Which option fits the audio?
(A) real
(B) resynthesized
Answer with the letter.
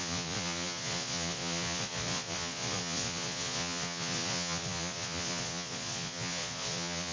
B